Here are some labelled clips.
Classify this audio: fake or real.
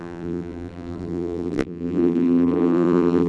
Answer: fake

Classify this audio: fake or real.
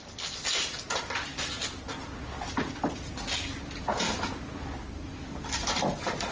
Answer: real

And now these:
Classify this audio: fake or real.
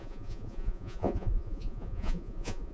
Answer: fake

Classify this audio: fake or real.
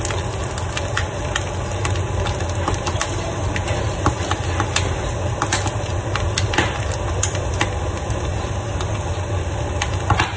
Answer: real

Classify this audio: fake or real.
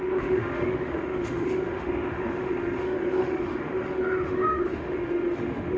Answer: fake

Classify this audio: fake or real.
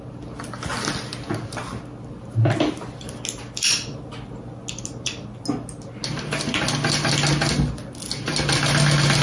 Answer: real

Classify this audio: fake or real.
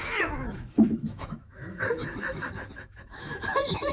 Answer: fake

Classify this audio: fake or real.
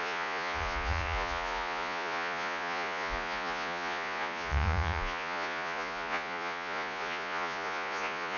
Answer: fake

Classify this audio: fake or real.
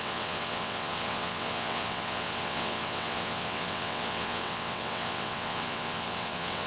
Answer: fake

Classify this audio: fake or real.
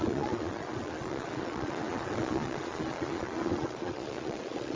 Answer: fake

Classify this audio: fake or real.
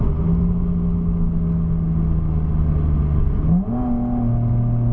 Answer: real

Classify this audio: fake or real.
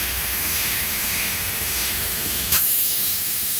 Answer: fake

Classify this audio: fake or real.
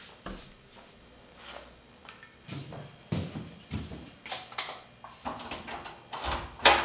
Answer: real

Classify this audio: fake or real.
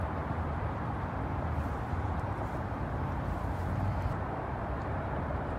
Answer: fake